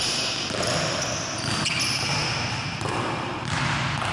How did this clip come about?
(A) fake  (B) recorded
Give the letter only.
B